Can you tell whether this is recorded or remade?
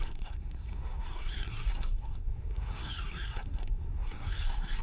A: remade